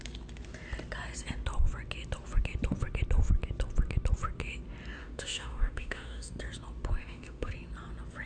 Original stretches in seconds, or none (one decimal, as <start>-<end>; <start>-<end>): 0.0-5.0; 6.3-7.0; 7.5-8.3